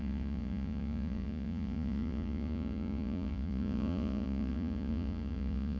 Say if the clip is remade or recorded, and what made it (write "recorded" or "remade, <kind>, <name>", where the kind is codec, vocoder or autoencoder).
remade, vocoder, Vocos